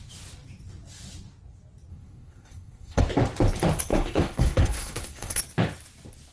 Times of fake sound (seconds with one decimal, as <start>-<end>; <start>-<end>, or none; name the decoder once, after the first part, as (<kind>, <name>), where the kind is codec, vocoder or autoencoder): 1.9-3.0 (codec, SNAC); 3.9-5.4